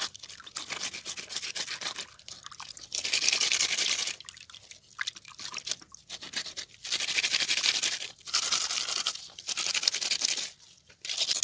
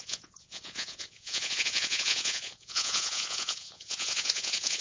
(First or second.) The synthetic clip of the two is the second